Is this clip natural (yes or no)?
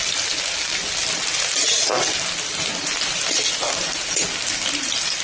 yes